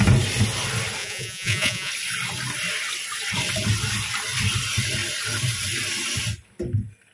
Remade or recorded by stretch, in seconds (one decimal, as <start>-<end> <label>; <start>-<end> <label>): 0.0-1.0 recorded; 1.0-1.9 remade; 1.9-7.1 recorded